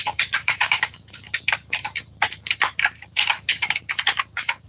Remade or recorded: remade